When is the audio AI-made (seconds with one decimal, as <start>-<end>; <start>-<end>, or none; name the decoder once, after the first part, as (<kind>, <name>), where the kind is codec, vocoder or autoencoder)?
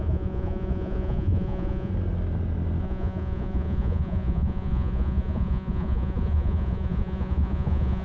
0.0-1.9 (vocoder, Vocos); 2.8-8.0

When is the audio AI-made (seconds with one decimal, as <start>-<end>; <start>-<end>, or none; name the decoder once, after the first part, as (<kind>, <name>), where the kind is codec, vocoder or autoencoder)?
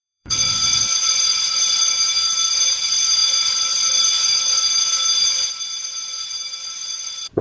0.0-1.9 (vocoder, Vocos); 3.2-4.6; 6.8-7.4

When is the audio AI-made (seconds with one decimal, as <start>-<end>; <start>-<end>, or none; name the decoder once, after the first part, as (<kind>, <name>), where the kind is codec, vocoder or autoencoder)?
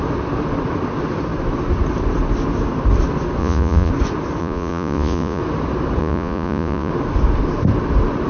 3.4-3.9 (vocoder, Vocos); 4.4-5.4; 6.0-6.9